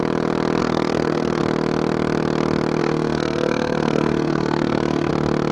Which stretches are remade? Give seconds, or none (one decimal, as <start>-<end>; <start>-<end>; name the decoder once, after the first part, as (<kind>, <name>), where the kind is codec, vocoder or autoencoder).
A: 0.6-1.4 (codec, SNAC); 2.8-5.1